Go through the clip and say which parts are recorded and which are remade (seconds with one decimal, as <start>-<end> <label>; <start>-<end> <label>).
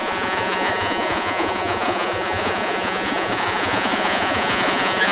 0.0-5.1 remade